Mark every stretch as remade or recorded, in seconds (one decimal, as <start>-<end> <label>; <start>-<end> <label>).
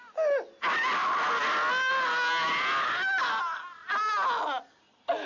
0.0-5.3 recorded